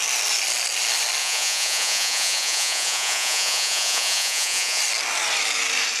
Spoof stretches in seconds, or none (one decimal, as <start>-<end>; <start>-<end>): 1.2-4.8